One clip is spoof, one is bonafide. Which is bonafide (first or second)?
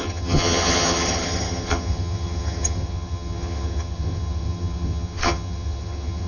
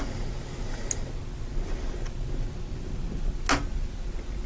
second